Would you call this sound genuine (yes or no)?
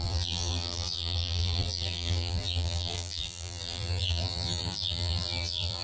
no